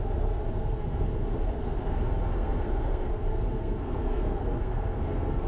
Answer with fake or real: fake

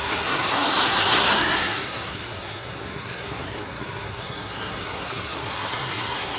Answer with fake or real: fake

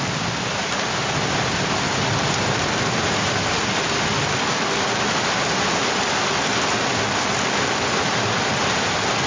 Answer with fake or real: real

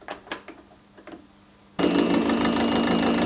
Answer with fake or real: real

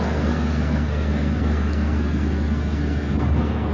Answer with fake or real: fake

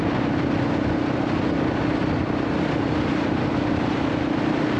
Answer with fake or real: real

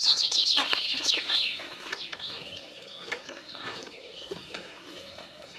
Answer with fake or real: fake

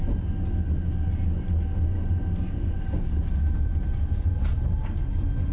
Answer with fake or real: real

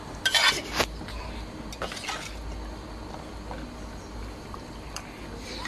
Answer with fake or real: real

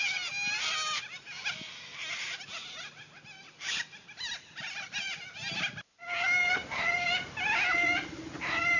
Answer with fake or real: real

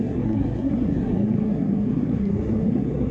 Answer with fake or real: fake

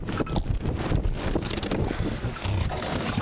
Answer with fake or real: real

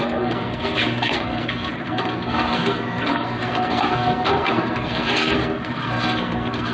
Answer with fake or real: fake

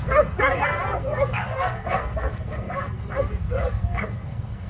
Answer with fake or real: fake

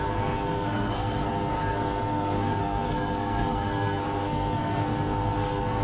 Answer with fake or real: fake